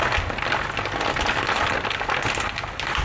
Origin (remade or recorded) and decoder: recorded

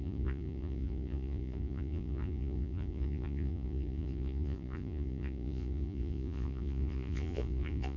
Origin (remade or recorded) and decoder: remade, vocoder, Vocos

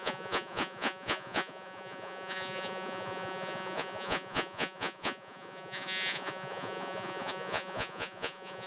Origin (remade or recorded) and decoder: remade, vocoder, Vocos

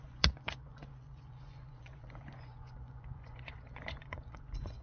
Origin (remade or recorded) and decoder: remade, vocoder, Vocos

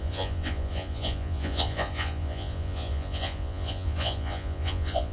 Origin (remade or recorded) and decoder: remade, vocoder, Vocos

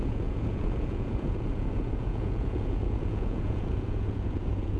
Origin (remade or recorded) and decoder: remade, vocoder, Vocos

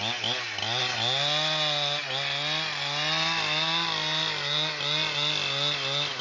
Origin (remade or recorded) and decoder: recorded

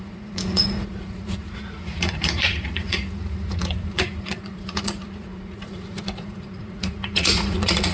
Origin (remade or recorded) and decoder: remade, vocoder, Vocos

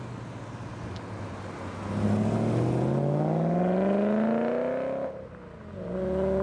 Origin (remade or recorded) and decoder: recorded